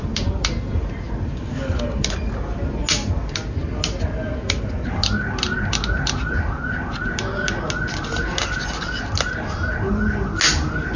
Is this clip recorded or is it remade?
recorded